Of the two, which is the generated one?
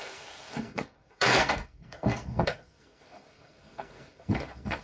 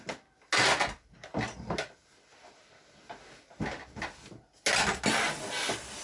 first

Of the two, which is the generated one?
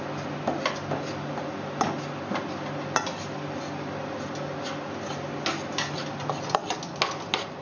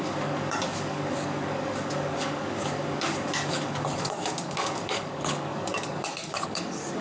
second